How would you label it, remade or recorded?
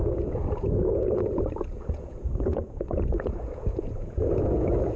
remade